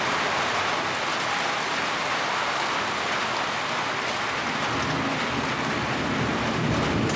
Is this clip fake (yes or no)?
no